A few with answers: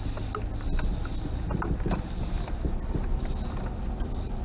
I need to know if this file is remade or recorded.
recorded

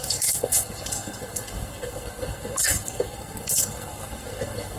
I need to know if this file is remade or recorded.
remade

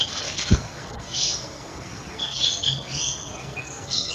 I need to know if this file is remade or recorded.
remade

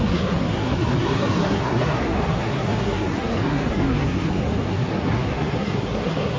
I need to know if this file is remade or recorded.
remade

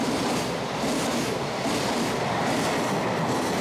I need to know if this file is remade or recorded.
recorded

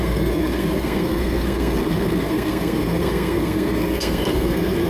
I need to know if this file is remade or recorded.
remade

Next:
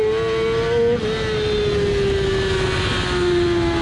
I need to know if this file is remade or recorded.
recorded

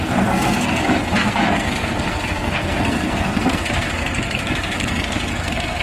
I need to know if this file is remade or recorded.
remade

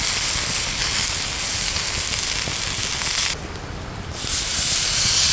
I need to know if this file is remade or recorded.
recorded